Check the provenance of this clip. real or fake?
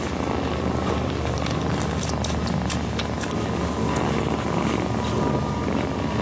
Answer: real